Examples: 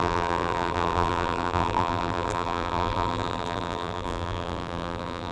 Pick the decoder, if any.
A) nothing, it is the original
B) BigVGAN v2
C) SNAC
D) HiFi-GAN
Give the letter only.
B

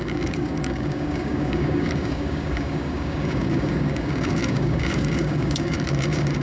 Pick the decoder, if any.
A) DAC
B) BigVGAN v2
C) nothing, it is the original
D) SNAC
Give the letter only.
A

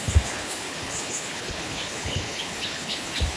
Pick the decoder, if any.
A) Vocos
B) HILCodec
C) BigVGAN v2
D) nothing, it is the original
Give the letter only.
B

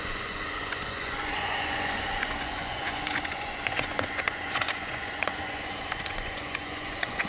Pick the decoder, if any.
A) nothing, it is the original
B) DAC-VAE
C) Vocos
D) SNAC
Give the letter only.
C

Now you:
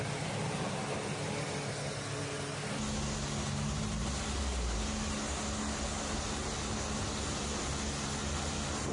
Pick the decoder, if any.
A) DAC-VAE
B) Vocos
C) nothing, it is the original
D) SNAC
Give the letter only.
C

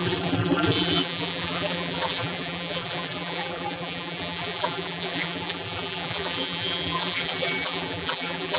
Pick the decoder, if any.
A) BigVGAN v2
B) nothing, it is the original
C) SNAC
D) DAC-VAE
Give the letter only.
A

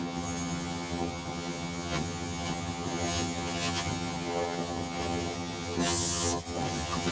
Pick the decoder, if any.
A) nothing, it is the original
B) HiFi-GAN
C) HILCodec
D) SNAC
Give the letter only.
B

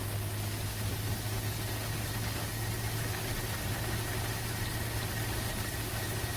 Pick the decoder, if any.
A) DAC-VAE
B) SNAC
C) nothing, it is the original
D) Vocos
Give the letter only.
C